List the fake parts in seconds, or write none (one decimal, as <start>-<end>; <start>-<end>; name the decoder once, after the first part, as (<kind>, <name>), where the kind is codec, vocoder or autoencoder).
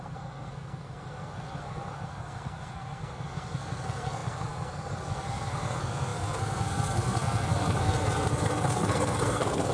0.0-9.7 (codec, SNAC)